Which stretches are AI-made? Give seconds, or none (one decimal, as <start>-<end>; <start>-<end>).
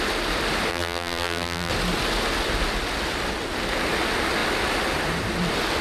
0.7-1.7